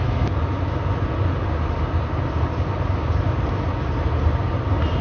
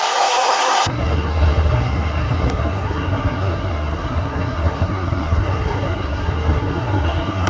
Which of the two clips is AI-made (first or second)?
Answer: second